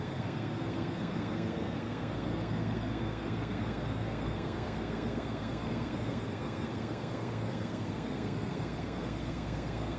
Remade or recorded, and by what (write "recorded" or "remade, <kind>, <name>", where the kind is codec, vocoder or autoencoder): remade, codec, SNAC